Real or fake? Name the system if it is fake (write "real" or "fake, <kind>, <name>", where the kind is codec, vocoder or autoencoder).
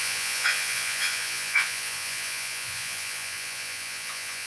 fake, vocoder, Vocos